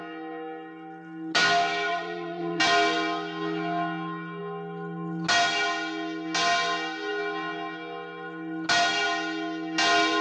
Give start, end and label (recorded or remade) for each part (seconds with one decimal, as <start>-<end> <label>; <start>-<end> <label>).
0.0-1.9 recorded; 1.9-2.6 remade; 2.6-10.2 recorded